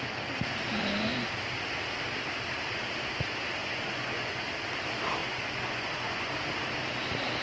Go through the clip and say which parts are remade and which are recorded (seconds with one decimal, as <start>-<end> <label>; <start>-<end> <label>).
0.0-3.6 recorded; 3.6-4.4 remade; 4.4-5.2 recorded; 5.2-6.3 remade; 6.3-7.4 recorded